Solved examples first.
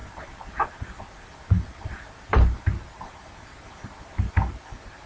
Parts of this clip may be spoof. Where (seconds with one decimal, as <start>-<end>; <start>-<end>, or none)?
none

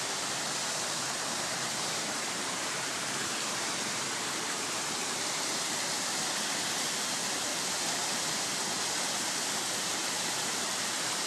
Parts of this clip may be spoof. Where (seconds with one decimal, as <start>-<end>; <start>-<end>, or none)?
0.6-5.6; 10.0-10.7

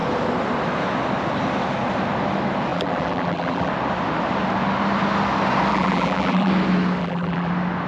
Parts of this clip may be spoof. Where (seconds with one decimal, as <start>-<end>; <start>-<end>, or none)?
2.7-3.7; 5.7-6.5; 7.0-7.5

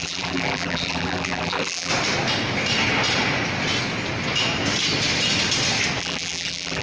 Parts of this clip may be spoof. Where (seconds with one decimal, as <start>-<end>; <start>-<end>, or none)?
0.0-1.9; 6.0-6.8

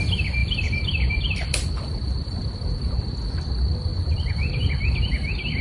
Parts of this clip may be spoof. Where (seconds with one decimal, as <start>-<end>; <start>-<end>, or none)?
0.4-3.3; 3.9-4.7

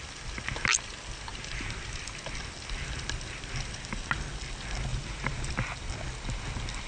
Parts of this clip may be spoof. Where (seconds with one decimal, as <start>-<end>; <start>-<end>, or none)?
1.3-2.0; 4.9-5.5